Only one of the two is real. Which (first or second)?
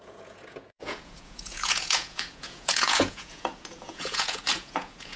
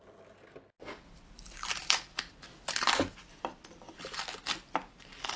second